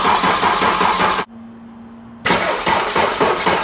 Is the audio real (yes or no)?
yes